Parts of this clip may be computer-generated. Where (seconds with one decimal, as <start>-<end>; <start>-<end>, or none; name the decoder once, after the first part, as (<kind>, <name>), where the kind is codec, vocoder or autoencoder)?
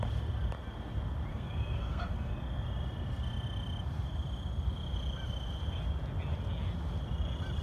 1.3-2.3 (codec, SNAC)